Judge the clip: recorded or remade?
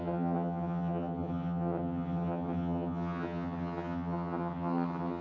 remade